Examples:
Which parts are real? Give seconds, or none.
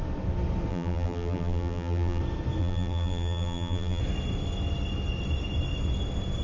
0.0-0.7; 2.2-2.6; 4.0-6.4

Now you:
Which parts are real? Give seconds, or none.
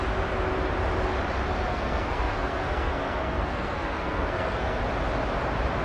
0.0-1.7; 4.8-5.8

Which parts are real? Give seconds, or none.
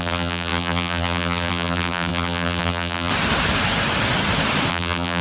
3.1-4.7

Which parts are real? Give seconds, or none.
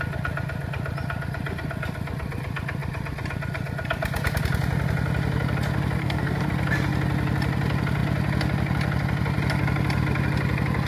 0.0-6.0; 6.5-10.9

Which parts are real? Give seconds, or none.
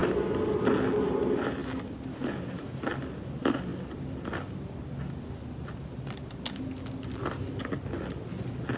0.0-8.8